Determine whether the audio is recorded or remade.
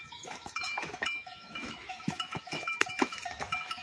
remade